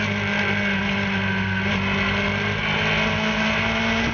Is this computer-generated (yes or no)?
no